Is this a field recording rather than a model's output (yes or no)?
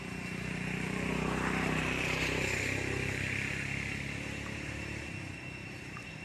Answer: yes